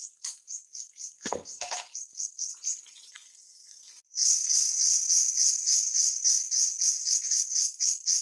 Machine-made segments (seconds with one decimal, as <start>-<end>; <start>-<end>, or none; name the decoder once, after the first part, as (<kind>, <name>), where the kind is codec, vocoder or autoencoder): 0.0-2.5 (codec, SNAC); 3.1-8.2